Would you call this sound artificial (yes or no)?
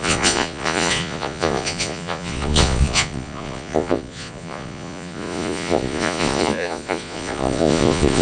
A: yes